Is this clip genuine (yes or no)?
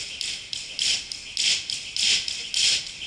yes